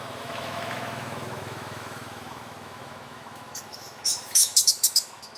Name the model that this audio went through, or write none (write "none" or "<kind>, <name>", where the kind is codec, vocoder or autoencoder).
autoencoder, DAC-VAE